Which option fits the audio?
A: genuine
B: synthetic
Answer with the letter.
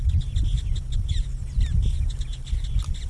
A